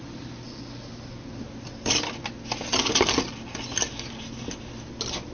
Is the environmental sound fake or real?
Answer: real